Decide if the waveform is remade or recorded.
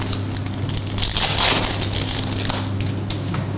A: recorded